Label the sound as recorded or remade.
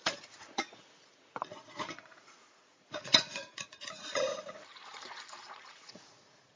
remade